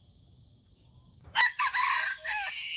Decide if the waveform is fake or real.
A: fake